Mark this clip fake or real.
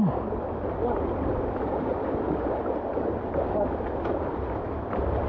real